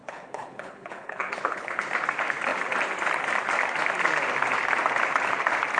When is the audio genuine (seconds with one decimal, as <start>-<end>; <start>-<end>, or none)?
1.8-5.8